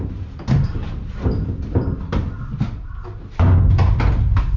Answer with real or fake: real